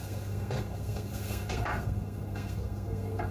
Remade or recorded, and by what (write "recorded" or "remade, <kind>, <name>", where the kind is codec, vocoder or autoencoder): remade, codec, SNAC